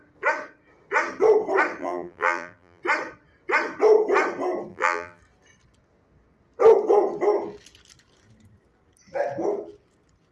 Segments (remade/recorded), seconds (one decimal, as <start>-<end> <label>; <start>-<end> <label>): 0.0-1.8 recorded; 1.8-2.8 remade; 2.8-4.7 recorded; 4.7-5.2 remade; 5.2-10.3 recorded